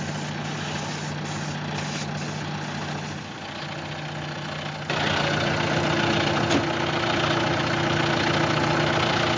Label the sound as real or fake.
real